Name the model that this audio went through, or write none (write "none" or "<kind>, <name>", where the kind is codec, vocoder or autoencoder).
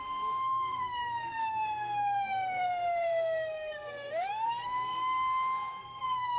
codec, SNAC